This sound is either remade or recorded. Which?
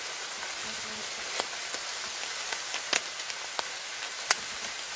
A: recorded